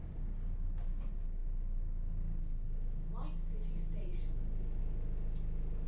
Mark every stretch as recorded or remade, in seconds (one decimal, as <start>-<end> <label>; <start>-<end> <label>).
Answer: 0.0-5.9 recorded